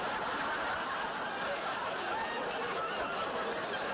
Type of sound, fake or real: real